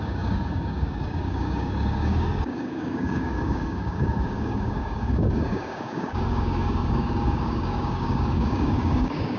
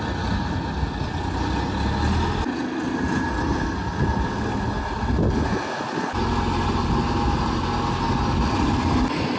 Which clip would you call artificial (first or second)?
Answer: first